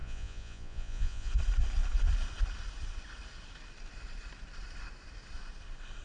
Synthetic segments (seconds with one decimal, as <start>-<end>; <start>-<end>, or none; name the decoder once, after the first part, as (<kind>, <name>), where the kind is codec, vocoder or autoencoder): 0.0-1.3 (vocoder, Vocos)